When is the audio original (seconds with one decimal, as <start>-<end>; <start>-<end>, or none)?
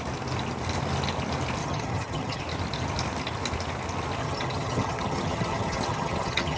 0.0-1.6; 2.4-4.2